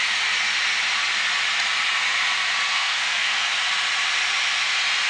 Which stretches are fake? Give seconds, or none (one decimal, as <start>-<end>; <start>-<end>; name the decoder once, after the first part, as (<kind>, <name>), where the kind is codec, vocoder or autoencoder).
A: 2.7-3.5 (codec, SNAC)